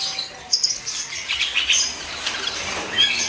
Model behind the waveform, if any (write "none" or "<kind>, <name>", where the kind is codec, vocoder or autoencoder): none